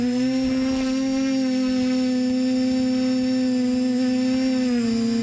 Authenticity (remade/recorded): recorded